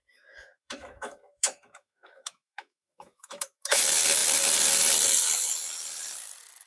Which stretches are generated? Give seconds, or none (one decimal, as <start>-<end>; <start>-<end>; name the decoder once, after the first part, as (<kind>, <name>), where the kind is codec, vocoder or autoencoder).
0.0-3.8 (autoencoder, DAC-VAE)